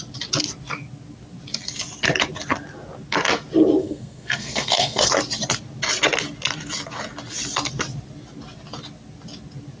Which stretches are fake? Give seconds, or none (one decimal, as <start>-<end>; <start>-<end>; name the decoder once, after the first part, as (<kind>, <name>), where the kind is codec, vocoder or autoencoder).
3.8-5.1 (codec, SNAC)